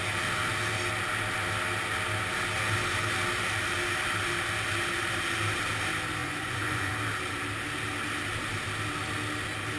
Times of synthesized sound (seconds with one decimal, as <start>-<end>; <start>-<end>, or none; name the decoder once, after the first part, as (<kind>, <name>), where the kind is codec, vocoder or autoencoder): 6.2-6.9 (vocoder, Vocos)